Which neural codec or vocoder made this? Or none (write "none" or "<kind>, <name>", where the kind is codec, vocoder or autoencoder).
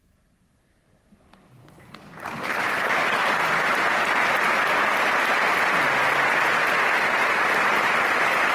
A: none